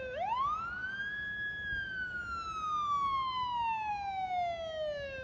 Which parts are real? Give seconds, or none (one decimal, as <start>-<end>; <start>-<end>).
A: 0.0-5.2